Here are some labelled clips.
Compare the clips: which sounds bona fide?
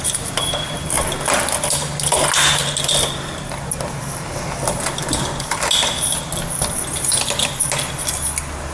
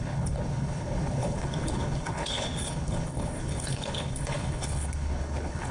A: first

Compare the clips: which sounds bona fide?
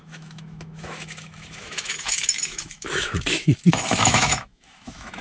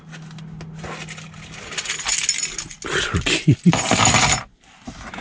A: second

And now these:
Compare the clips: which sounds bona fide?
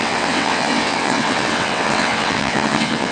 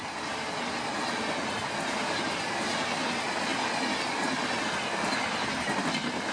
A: second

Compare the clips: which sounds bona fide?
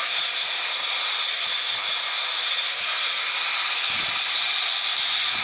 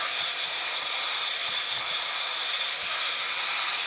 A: first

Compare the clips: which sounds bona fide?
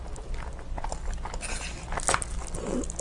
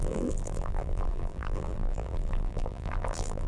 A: first